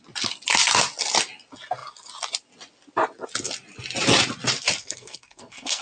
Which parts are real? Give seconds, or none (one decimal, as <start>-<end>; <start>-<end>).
0.0-4.8